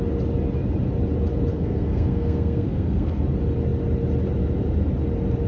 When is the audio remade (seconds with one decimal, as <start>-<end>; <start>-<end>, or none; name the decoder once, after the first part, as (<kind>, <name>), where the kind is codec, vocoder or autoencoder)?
1.5-3.2 (codec, SNAC)